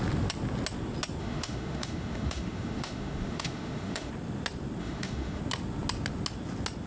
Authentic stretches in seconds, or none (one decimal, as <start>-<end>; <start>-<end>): 0.0-1.2; 4.1-4.8; 5.4-6.9